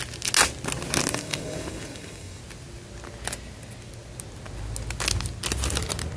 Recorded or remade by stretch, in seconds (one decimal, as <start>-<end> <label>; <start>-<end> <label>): 0.0-1.1 recorded; 1.1-2.4 remade; 2.4-6.2 recorded